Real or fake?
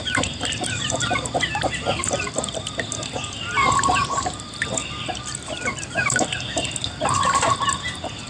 real